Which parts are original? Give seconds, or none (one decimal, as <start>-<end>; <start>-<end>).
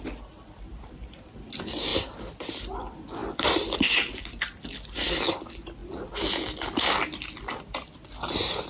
0.0-0.7; 1.3-1.9; 2.5-8.7